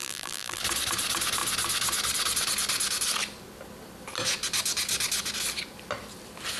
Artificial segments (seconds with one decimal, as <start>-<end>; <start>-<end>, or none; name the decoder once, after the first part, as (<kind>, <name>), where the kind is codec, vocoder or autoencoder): 0.0-0.6 (vocoder, BigVGAN v2)